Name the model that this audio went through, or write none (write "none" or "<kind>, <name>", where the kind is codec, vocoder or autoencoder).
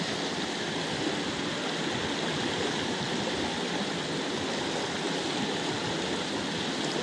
none